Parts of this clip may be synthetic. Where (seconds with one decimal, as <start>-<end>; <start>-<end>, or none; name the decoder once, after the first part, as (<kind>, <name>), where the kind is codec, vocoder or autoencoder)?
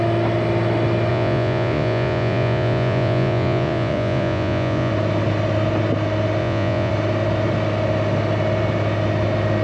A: 1.1-4.9 (vocoder, Vocos); 6.4-6.9